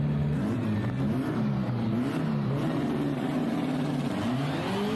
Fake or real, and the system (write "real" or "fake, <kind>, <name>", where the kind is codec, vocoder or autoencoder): real